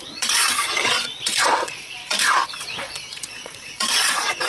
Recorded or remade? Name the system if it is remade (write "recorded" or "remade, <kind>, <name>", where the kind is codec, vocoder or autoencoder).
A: remade, vocoder, Vocos